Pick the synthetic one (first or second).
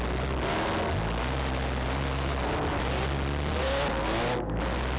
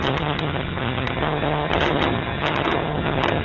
second